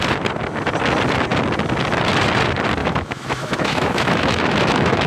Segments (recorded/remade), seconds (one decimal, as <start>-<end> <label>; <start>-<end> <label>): 0.0-2.8 recorded; 2.8-5.1 remade